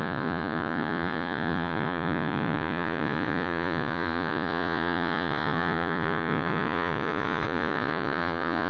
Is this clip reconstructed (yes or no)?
yes